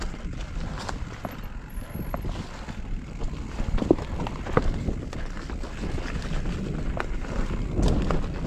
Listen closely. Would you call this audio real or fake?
real